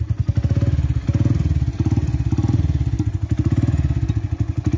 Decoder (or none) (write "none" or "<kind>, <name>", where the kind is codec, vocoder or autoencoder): none